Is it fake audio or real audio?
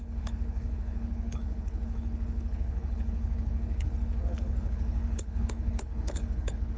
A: fake